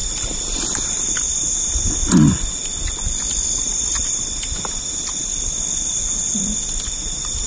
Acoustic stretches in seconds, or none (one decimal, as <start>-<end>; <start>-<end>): 1.5-4.0